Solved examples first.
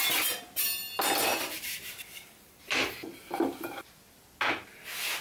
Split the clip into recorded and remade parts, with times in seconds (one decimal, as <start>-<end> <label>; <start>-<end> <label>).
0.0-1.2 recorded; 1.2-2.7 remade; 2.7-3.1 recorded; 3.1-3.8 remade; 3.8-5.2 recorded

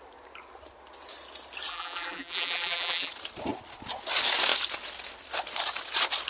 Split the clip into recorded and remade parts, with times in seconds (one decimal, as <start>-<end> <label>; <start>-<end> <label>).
0.0-1.7 recorded; 1.7-3.1 remade; 3.1-6.3 recorded

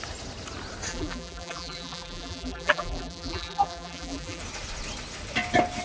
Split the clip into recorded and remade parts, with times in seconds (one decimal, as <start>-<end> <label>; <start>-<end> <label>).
0.0-0.9 recorded; 0.9-4.4 remade; 4.4-5.8 recorded

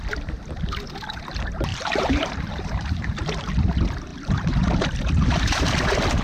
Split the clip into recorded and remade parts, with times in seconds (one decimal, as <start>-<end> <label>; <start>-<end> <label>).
0.0-1.7 recorded; 1.7-3.2 remade; 3.2-4.1 recorded; 4.1-4.7 remade; 4.7-6.2 recorded